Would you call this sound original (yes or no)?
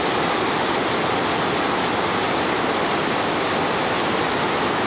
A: yes